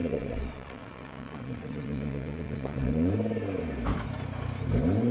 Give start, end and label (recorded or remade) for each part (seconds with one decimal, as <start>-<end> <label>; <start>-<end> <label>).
0.0-3.1 remade; 3.1-5.1 recorded

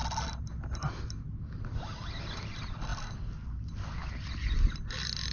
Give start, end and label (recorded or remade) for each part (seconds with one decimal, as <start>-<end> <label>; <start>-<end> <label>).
0.0-5.3 recorded

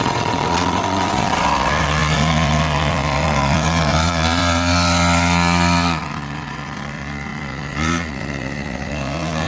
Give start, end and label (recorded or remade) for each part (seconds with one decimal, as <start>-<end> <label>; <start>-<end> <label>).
0.0-9.5 remade

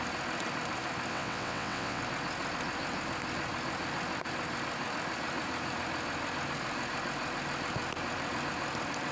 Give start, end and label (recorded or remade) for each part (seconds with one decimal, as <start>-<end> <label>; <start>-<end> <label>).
0.0-1.1 recorded; 1.1-2.0 remade; 2.0-9.1 recorded